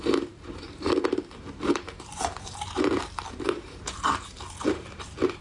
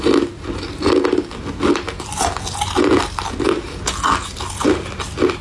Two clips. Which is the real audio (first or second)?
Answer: second